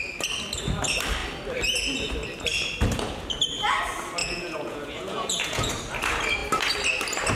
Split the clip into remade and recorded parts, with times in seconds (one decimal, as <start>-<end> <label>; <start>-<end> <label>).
0.0-4.2 recorded; 4.2-5.7 remade; 5.7-7.4 recorded